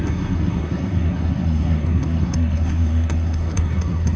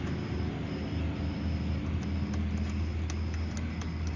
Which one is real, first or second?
second